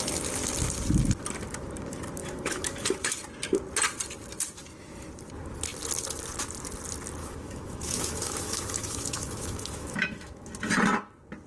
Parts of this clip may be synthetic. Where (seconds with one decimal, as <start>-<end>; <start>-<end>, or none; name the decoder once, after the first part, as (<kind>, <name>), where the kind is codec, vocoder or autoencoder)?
2.2-3.2 (autoencoder, DAC-VAE); 7.2-10.5